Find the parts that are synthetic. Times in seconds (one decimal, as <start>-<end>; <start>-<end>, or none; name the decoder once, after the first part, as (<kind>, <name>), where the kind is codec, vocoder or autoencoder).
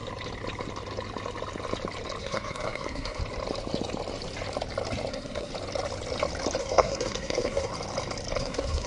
2.2-3.2 (codec, SNAC); 5.1-5.5; 6.6-7.7; 8.4-8.9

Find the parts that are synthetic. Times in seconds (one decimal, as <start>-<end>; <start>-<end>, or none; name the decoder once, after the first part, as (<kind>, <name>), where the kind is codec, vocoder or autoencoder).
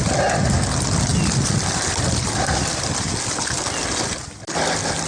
none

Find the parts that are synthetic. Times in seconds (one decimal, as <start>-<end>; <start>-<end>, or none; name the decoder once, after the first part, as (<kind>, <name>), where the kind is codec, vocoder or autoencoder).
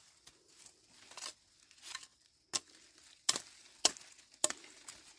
none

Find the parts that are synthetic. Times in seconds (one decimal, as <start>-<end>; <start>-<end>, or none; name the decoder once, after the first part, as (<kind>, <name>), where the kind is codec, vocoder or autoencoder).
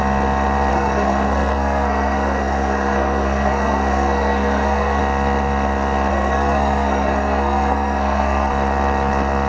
0.7-5.0 (codec, SNAC); 6.1-8.5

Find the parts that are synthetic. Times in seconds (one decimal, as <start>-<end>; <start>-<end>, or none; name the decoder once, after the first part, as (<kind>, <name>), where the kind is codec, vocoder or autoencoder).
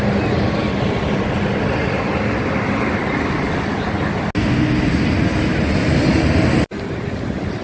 none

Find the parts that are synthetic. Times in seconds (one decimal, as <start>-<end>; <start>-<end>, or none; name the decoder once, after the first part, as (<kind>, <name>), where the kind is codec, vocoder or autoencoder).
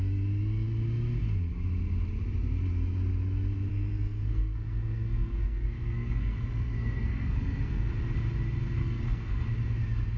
3.7-7.9 (codec, SNAC); 8.8-9.4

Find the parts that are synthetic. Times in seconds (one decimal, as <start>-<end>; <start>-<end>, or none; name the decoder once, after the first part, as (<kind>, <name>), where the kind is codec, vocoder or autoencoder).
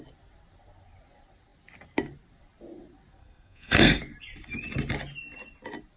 3.2-4.0 (codec, SNAC)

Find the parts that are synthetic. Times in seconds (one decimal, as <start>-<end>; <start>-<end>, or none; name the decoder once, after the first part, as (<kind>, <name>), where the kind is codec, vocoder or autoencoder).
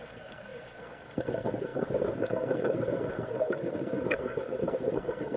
0.0-5.4 (codec, SNAC)